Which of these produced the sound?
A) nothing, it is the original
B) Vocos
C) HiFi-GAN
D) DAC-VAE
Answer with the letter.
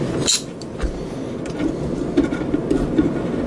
A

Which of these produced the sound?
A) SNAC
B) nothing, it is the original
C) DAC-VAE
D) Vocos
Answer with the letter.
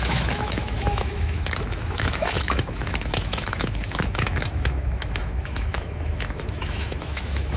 C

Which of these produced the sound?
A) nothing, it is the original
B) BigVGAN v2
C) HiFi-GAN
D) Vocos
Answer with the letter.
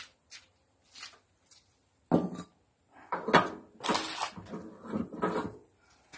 A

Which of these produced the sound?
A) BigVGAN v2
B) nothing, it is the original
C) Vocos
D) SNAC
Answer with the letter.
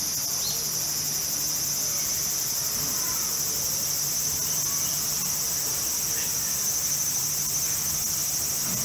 B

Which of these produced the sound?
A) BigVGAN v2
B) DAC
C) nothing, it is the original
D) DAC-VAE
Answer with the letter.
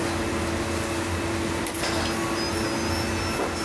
C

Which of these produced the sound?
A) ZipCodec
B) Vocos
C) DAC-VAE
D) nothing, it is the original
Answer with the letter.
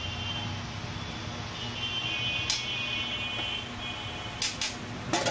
D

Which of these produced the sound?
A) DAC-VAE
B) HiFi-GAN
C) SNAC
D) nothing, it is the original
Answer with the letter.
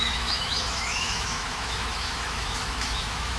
A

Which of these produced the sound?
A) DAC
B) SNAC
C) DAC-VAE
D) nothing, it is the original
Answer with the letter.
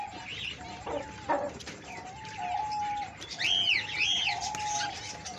D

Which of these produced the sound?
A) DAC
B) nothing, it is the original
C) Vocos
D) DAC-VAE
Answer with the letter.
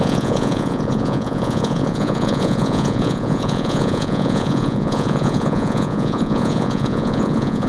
C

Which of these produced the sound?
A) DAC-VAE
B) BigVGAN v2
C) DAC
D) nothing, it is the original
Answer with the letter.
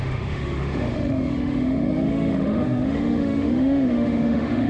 A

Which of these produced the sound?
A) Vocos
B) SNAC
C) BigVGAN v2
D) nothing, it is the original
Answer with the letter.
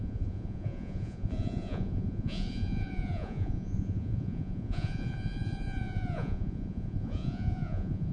A